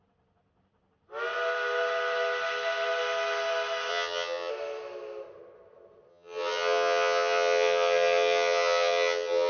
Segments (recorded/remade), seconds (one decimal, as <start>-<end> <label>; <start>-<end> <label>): 0.0-3.9 recorded; 3.9-4.5 remade; 4.5-6.1 recorded; 6.1-9.5 remade